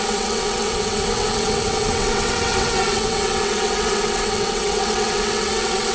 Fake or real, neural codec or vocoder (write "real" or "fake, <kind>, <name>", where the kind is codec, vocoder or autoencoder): fake, vocoder, WaveNeXt